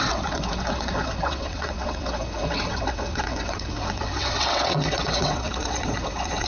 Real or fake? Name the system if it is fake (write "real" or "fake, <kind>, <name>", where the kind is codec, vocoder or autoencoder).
fake, vocoder, WaveNeXt